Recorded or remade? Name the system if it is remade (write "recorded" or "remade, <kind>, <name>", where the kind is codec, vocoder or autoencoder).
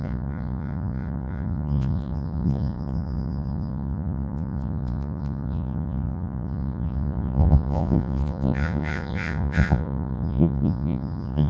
remade, vocoder, Vocos